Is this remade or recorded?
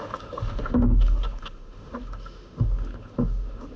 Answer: remade